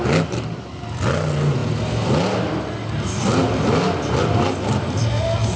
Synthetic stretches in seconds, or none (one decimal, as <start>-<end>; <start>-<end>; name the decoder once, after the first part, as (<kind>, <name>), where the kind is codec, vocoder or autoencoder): none